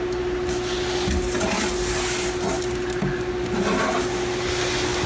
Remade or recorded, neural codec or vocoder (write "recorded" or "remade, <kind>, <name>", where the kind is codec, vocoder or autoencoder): recorded